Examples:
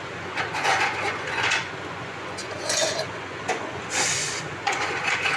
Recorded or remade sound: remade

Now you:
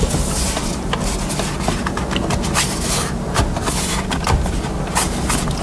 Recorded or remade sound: recorded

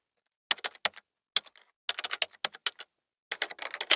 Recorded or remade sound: recorded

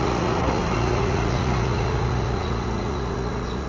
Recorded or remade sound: remade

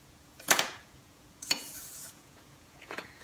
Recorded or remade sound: remade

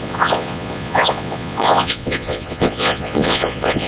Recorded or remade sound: remade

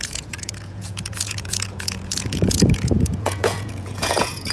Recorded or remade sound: remade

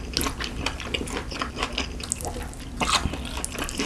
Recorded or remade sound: recorded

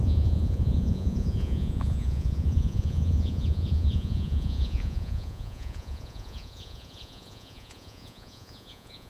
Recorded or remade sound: remade